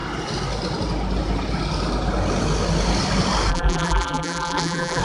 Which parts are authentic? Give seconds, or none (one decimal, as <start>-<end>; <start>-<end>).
0.0-3.5